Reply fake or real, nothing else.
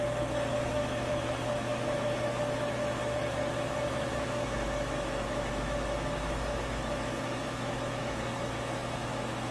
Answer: fake